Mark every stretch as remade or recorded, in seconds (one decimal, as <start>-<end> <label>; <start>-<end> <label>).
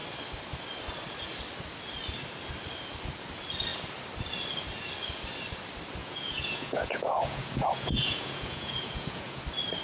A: 0.0-6.0 recorded; 6.0-9.4 remade; 9.4-9.8 recorded